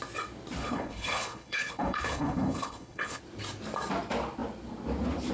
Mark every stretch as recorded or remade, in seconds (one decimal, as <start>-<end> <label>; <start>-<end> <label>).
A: 0.0-0.6 recorded; 0.6-3.2 remade; 3.2-5.3 recorded